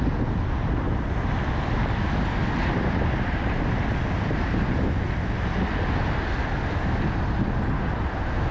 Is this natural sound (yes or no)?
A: yes